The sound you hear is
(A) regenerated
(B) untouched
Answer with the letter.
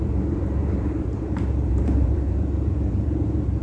A